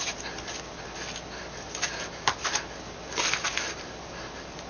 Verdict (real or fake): real